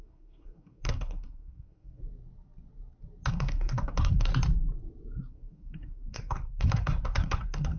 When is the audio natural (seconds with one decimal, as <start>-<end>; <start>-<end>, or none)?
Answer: 2.0-3.3; 4.3-5.2